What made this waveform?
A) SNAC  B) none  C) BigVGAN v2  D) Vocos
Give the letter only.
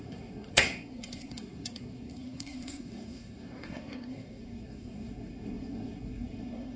A